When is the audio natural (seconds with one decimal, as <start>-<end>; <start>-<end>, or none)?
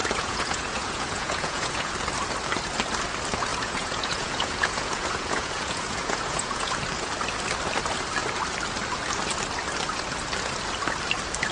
1.9-3.5; 6.7-11.5